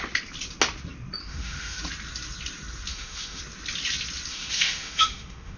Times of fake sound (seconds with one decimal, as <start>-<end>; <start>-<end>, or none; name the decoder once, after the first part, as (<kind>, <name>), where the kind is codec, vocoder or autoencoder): 1.2-1.8 (autoencoder, DAC-VAE); 2.9-3.4; 4.3-5.6